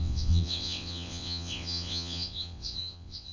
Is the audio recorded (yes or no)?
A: no